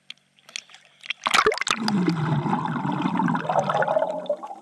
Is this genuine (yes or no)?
yes